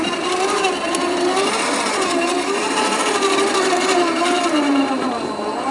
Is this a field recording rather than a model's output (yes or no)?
no